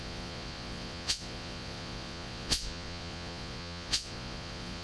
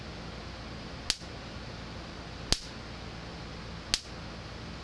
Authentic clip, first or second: second